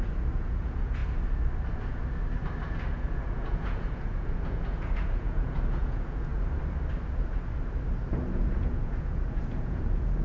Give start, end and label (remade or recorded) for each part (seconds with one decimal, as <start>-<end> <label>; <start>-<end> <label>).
0.0-1.0 remade; 1.0-2.9 recorded; 2.9-6.3 remade; 6.3-8.0 recorded; 8.0-10.2 remade